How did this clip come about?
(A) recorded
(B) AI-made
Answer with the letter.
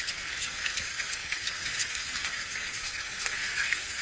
B